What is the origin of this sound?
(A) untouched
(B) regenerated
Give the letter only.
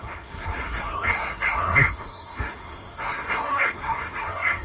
B